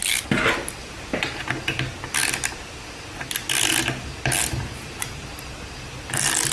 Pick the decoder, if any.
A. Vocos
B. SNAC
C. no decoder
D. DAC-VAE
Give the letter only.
C